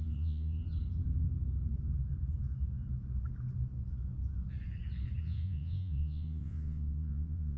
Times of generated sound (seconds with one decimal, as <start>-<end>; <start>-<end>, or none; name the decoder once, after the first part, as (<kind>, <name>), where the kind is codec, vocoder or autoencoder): 0.0-0.6 (vocoder, Vocos); 5.2-7.6